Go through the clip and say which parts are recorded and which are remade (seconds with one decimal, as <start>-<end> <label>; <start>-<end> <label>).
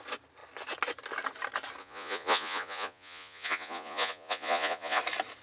0.0-1.8 recorded; 1.8-5.0 remade; 5.0-5.4 recorded